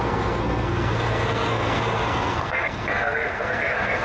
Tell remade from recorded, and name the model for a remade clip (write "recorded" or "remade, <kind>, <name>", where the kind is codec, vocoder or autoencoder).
remade, codec, SNAC